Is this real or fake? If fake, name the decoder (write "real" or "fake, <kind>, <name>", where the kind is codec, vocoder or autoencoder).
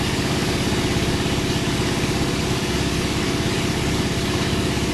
fake, codec, DAC